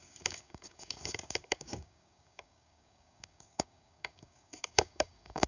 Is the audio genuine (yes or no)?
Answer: no